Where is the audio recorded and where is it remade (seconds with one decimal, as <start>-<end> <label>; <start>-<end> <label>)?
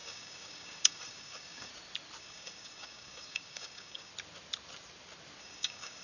0.0-1.7 remade; 1.7-2.2 recorded; 2.2-4.1 remade; 4.1-5.4 recorded; 5.4-6.0 remade